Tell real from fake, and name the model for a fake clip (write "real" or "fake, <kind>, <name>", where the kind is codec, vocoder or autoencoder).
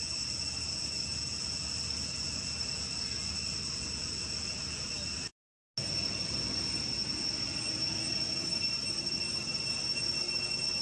real